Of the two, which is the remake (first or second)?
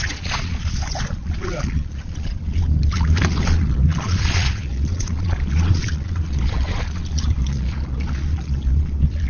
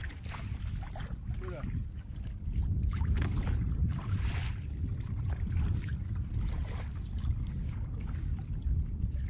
first